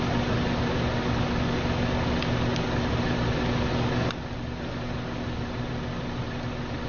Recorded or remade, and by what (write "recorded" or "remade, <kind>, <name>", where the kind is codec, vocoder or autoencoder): recorded